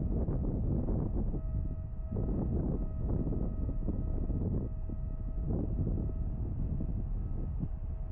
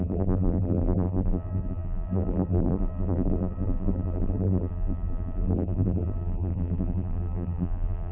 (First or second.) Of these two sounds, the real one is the first